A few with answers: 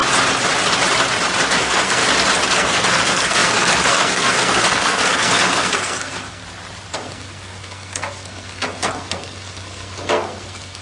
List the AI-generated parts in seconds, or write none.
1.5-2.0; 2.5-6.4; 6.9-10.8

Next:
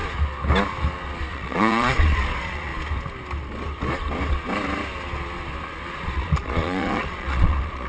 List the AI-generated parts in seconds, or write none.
1.3-2.7; 5.9-7.9

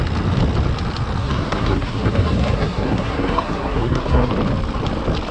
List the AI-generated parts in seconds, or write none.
1.2-4.3

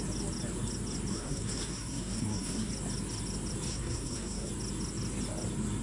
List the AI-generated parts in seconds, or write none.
1.1-2.7; 3.7-4.5

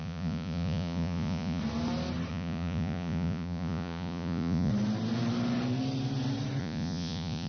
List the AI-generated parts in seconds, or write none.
0.0-1.6; 2.3-4.7; 6.6-7.5

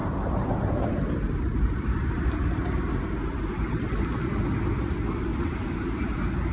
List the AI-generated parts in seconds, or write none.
0.0-3.9

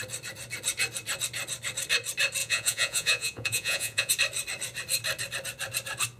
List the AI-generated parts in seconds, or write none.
2.4-4.1

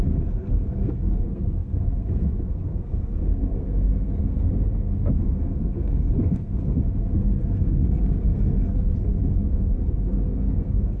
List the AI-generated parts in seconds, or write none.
0.0-11.0